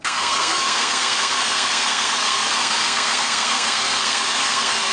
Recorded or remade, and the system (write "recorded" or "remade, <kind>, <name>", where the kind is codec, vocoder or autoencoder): remade, codec, SNAC